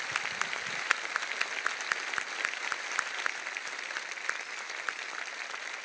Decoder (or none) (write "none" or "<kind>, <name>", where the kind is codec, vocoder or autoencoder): none